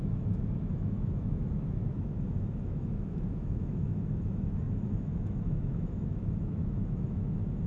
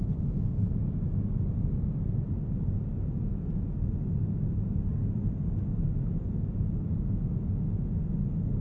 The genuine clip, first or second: second